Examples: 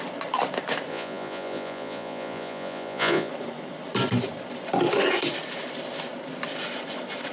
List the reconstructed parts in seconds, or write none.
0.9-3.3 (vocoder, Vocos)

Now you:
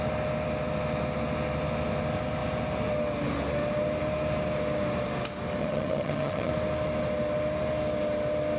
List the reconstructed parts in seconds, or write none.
5.6-6.5 (vocoder, HiFi-GAN)

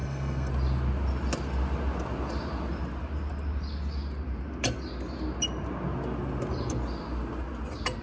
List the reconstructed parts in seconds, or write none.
0.0-0.5 (codec, SNAC)

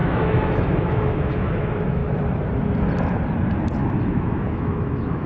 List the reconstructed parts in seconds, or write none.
0.0-2.0 (autoencoder, DAC-VAE); 4.0-5.3

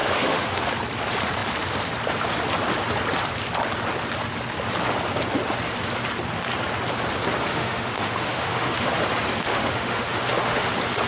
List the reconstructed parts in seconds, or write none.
0.0-0.7 (autoencoder, DAC-VAE); 7.5-8.9; 9.5-10.7

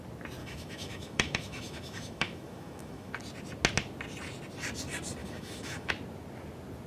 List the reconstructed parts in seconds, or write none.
0.4-3.1 (autoencoder, DAC-VAE); 5.2-5.9

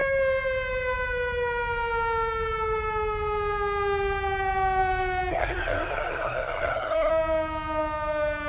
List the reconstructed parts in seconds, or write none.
5.3-7.1 (codec, SNAC)

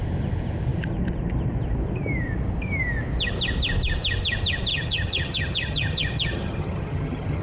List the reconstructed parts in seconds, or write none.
4.7-7.4 (vocoder, HiFi-GAN)